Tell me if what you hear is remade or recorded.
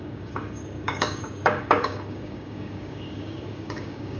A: remade